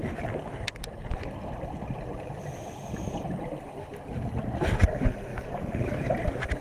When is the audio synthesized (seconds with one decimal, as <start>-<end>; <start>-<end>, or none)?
5.3-6.1